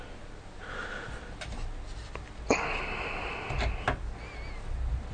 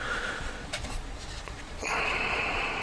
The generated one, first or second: second